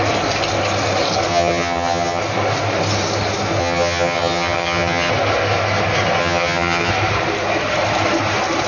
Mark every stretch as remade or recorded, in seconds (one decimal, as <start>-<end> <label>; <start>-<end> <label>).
0.0-1.3 recorded; 1.3-2.2 remade; 2.2-3.6 recorded; 3.6-5.1 remade; 5.1-6.2 recorded; 6.2-6.9 remade; 6.9-8.7 recorded